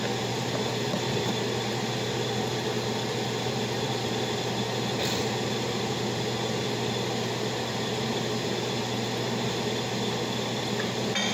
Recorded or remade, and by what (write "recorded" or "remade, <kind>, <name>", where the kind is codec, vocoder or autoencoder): recorded